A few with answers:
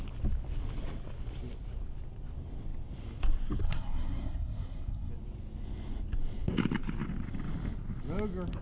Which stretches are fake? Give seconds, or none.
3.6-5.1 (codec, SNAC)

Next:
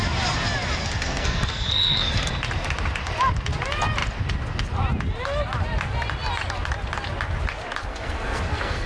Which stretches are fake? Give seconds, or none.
0.8-2.3 (codec, SNAC); 7.9-8.9

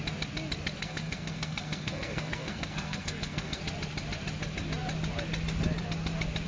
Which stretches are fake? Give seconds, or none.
0.8-3.6 (codec, SNAC)

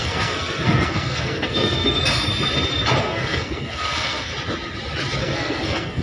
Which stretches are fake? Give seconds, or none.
0.0-2.0 (codec, SNAC); 3.0-4.3; 5.2-6.0

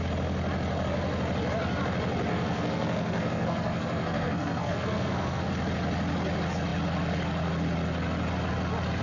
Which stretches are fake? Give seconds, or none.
2.3-5.5 (codec, SNAC)

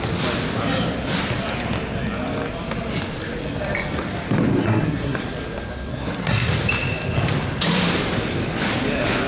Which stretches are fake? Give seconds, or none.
4.6-5.2 (codec, SNAC); 5.9-6.5

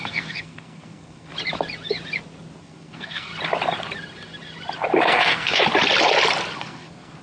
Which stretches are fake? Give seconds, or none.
0.0-1.3 (codec, SNAC); 2.6-3.3; 5.0-5.6; 6.6-7.2

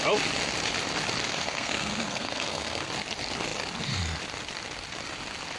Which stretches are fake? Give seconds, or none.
1.3-2.9 (codec, SNAC)